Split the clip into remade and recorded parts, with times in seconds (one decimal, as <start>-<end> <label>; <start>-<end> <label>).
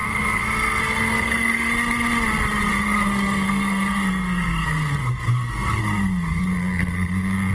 0.0-1.7 remade; 1.7-2.7 recorded; 2.7-7.5 remade